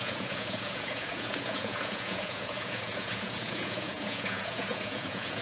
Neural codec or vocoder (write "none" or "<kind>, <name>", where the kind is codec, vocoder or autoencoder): vocoder, Vocos